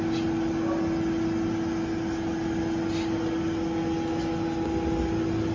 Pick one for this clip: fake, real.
real